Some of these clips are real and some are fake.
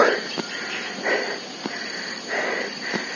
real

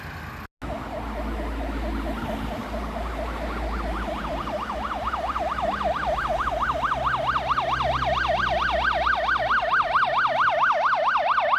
real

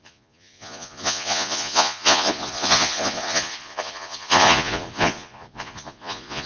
fake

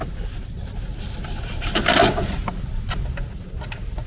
real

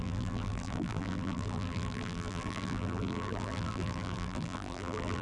fake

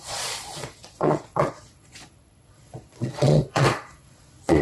fake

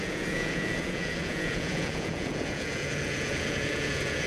fake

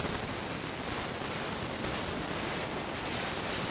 real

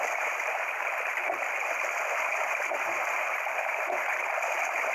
fake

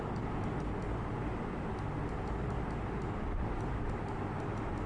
real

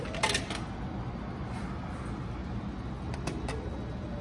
real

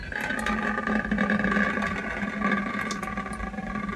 real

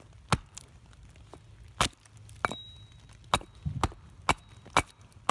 real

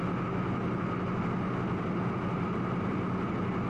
real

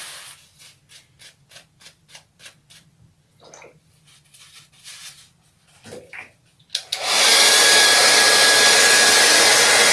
real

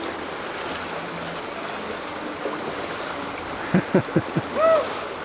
real